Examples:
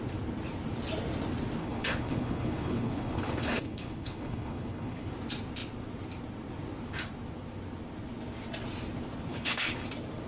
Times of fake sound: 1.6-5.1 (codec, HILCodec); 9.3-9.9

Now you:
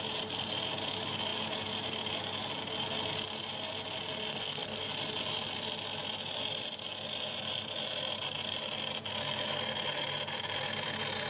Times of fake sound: 4.3-4.9 (codec, SNAC)

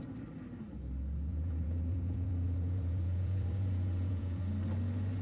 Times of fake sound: 1.3-4.4 (vocoder, Vocos)

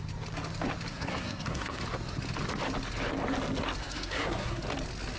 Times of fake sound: 0.9-1.8 (codec, SNAC); 3.8-4.6

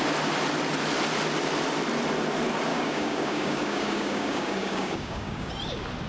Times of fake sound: 2.7-5.5 (codec, DAC)

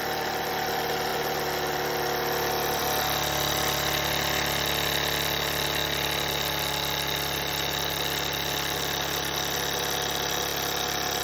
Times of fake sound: none

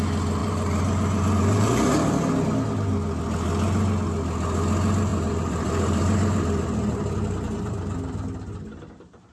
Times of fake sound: 0.4-2.3 (vocoder, BigVGAN v2); 5.1-8.6

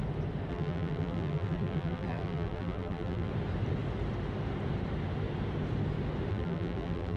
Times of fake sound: 0.5-3.3 (vocoder, BigVGAN v2); 6.3-7.2